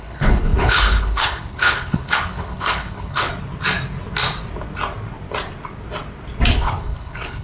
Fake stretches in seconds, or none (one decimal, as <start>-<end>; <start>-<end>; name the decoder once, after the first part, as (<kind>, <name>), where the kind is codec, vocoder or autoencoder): 0.0-3.3 (codec, HILCodec); 6.5-7.4